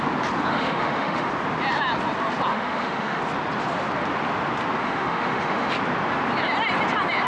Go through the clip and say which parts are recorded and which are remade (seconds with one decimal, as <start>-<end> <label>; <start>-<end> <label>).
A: 0.0-0.5 recorded; 0.5-1.3 remade; 1.3-2.5 recorded; 2.5-3.2 remade; 3.2-4.8 recorded; 4.8-5.7 remade; 5.7-7.3 recorded